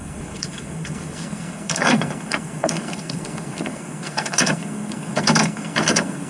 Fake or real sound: fake